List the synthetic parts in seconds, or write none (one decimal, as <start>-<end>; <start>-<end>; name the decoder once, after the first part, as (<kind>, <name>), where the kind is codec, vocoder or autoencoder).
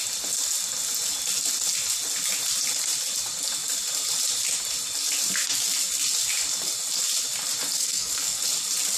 7.8-8.4 (codec, SNAC)